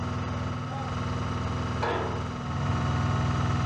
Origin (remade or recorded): recorded